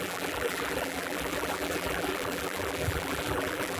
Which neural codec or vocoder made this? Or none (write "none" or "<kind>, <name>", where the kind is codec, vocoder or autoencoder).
vocoder, BigVGAN v2